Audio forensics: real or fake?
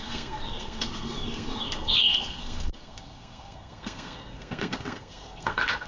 fake